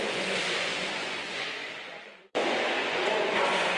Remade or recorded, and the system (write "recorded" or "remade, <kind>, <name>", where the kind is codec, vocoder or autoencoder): remade, vocoder, Vocos